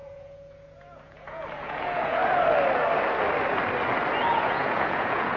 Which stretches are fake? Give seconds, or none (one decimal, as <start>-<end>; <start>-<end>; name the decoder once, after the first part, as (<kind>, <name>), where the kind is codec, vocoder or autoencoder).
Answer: 0.0-2.2 (vocoder, Vocos); 4.3-5.4